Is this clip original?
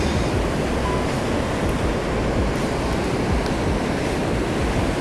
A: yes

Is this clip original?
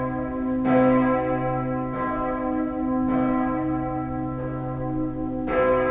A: yes